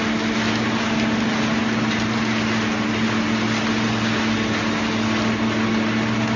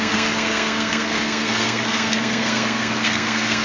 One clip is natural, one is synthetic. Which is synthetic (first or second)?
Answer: second